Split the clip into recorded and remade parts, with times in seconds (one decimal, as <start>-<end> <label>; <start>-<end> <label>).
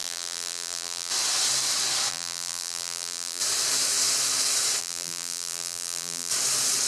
0.0-1.1 remade; 1.1-2.1 recorded; 2.1-3.4 remade; 3.4-4.8 recorded; 4.8-6.3 remade; 6.3-6.9 recorded